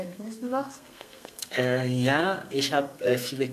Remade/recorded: remade